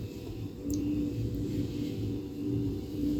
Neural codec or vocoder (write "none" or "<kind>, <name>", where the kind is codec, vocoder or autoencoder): vocoder, BigVGAN v2